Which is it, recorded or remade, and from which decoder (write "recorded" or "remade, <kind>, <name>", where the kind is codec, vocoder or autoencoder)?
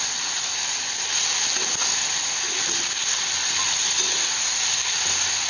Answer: recorded